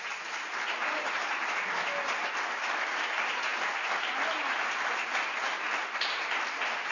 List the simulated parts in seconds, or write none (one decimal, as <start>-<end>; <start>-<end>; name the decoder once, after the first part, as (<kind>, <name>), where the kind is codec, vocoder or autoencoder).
none